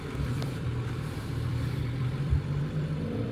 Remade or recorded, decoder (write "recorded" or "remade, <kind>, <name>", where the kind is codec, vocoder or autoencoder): remade, vocoder, BigVGAN v2